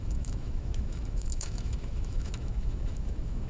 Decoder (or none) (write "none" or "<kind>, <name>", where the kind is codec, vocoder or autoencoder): autoencoder, DAC-VAE